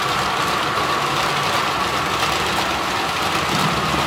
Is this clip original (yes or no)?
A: yes